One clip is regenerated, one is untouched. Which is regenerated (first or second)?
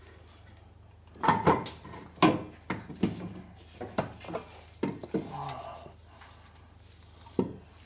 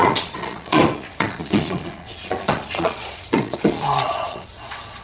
second